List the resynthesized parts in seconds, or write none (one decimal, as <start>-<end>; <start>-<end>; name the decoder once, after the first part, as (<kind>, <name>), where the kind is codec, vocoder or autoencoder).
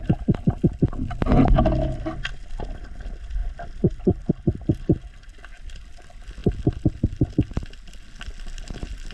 3.4-4.3 (vocoder, BigVGAN v2)